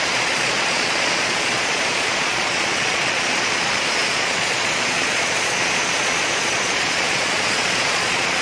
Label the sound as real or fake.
fake